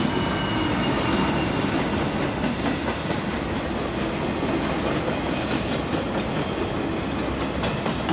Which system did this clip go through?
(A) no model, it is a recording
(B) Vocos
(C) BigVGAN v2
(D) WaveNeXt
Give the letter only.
A